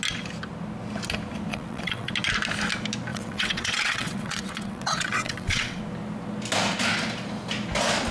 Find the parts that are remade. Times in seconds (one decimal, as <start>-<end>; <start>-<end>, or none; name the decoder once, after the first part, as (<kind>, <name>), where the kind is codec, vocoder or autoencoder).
1.5-2.1 (vocoder, WaveNeXt); 3.1-5.8